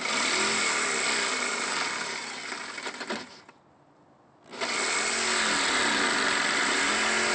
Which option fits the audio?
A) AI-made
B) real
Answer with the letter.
B